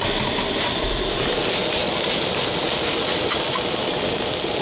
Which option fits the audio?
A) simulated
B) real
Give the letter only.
B